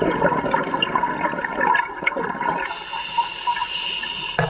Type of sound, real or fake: real